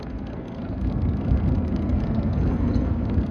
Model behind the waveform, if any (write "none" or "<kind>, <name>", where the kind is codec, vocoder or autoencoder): codec, SNAC